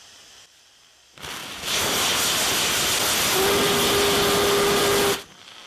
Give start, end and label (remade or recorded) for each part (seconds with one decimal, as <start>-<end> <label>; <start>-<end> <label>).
0.0-5.7 recorded